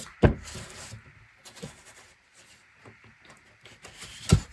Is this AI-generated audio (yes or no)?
no